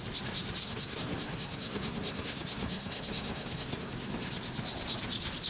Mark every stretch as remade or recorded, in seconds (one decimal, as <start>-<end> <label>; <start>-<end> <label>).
0.0-0.6 recorded; 0.6-3.9 remade; 3.9-5.5 recorded